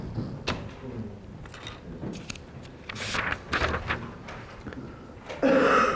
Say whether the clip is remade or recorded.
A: recorded